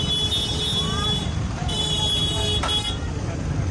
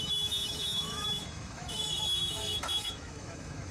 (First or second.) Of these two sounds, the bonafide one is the first